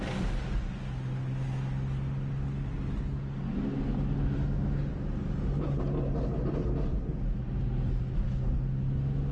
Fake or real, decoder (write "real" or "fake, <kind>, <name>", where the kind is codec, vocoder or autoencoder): real